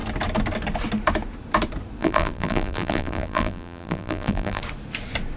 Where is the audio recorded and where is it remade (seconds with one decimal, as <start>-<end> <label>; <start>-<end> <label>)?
0.0-2.0 recorded; 2.0-4.6 remade; 4.6-5.4 recorded